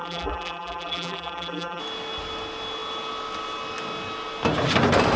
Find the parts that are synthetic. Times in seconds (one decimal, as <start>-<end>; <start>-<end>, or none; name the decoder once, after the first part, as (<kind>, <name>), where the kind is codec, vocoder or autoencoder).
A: 0.0-1.8 (vocoder, BigVGAN v2)